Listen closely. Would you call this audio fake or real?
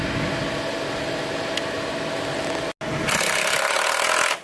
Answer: real